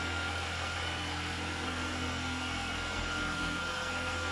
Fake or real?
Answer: fake